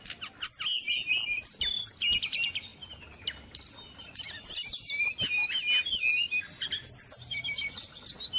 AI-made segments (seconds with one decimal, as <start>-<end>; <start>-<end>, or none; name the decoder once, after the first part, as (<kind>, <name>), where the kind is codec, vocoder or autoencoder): none